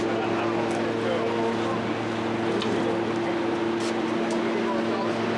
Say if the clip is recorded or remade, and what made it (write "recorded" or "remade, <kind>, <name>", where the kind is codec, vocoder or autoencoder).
recorded